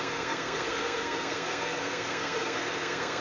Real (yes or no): no